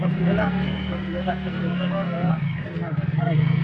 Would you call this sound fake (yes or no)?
yes